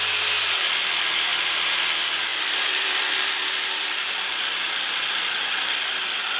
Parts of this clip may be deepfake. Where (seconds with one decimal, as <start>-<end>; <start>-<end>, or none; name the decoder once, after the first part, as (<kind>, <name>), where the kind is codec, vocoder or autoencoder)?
1.3-1.8 (vocoder, BigVGAN v2); 2.3-5.8